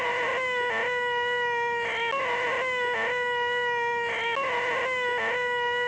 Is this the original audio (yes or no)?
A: yes